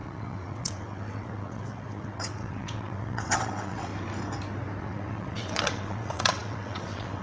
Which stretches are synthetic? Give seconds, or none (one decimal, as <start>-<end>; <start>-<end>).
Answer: 0.0-3.9; 4.8-7.2

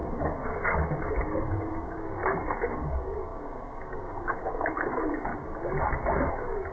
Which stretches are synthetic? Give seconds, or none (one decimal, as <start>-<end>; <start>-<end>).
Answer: 0.0-5.3; 6.3-6.7

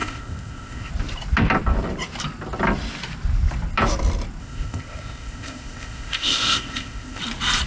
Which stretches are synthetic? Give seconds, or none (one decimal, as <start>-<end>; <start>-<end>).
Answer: 0.0-0.9; 4.4-7.2

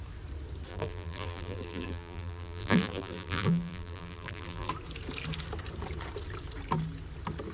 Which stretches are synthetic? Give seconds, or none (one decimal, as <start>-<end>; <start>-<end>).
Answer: 0.7-4.7

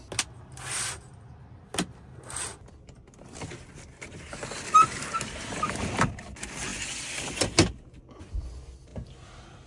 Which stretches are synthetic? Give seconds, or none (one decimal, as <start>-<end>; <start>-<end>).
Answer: none